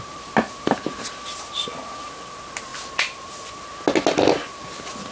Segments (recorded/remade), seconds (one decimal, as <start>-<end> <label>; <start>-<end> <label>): 0.0-5.1 recorded